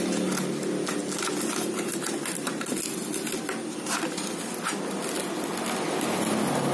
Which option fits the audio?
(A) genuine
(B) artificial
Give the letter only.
A